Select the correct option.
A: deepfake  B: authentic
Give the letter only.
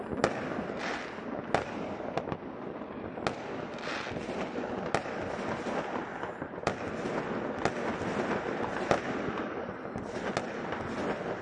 B